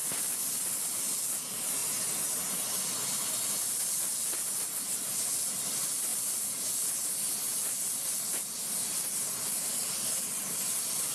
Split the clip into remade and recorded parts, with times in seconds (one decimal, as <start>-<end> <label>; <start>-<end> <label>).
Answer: 0.0-1.8 remade; 1.8-3.9 recorded; 3.9-11.1 remade